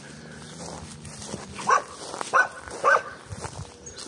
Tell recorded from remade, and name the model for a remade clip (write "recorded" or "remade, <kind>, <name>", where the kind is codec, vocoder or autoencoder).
recorded